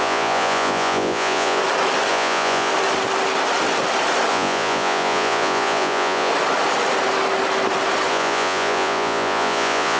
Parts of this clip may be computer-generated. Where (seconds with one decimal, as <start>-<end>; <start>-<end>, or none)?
0.0-1.6; 2.1-2.7; 4.3-6.3; 8.1-10.0